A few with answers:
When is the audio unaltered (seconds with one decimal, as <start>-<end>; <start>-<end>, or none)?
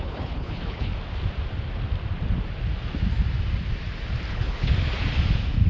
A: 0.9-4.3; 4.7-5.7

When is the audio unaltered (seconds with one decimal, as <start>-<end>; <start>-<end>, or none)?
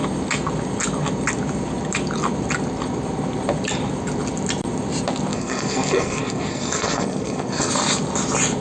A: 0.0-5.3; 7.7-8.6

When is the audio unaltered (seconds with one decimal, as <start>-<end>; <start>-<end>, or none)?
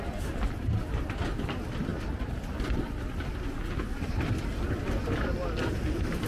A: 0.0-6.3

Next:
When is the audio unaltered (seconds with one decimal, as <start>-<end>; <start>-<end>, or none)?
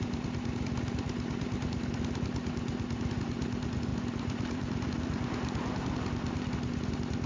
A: 0.0-3.9; 6.5-7.3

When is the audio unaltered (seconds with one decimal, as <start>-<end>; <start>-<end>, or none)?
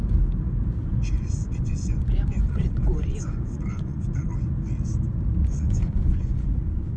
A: 0.0-1.1; 4.3-5.4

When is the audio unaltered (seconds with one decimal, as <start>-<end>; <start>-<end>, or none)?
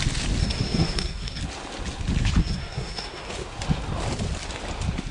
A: 0.0-0.4; 1.4-2.4; 3.3-5.1